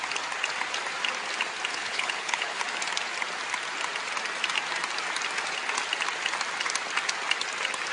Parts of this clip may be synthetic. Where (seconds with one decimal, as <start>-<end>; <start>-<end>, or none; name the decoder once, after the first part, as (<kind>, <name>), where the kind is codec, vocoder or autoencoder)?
1.7-2.6 (codec, HILCodec)